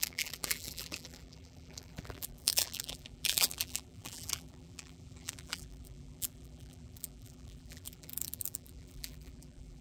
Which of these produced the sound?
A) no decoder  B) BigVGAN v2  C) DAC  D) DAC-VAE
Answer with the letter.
B